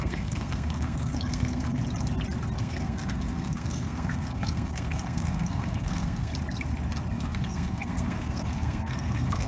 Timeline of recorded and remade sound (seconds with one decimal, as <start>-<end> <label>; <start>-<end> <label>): 0.0-1.8 remade; 1.8-2.6 recorded; 2.6-6.3 remade; 6.3-7.1 recorded; 7.1-9.5 remade